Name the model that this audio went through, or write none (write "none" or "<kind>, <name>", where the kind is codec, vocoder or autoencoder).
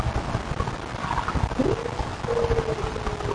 none